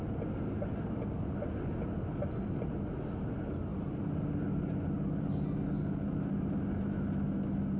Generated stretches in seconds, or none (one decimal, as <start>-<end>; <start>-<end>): none